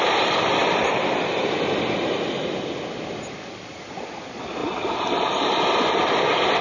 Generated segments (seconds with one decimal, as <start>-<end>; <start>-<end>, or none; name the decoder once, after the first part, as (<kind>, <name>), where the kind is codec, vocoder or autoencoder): none